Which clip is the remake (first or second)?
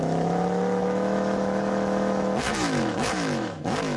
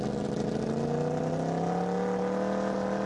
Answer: first